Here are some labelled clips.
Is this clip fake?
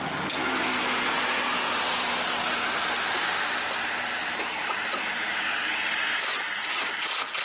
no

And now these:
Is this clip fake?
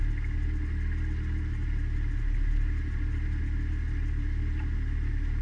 no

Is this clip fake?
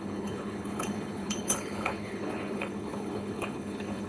yes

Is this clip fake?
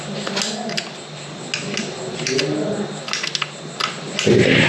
no